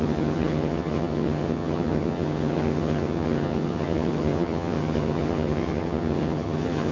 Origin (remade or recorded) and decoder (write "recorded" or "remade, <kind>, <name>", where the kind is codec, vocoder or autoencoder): remade, vocoder, HiFi-GAN